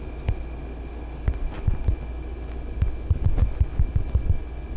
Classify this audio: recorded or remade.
recorded